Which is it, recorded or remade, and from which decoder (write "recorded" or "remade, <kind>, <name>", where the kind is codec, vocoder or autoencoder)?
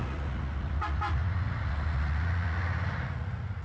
remade, vocoder, Vocos